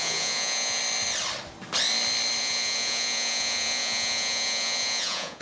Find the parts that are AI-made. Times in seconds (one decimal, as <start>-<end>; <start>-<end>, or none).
0.0-0.8; 2.4-5.4